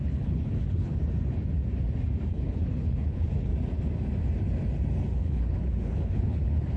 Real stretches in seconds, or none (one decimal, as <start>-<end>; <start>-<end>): 1.0-2.3; 3.5-5.1